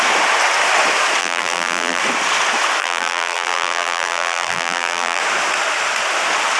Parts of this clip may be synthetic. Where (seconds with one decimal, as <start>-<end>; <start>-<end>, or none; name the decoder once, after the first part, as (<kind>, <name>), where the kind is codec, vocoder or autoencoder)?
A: 1.2-2.0 (vocoder, BigVGAN v2); 2.8-5.2